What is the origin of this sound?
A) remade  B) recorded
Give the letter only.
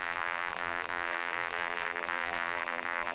A